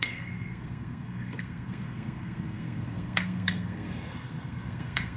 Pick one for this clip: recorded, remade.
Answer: remade